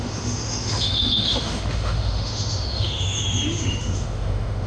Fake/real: fake